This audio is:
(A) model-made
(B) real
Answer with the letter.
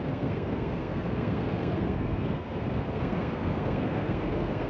A